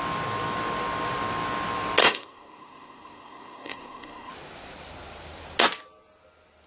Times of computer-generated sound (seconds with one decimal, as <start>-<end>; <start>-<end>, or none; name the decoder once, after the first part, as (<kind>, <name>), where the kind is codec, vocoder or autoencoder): 2.0-4.3 (codec, SNAC)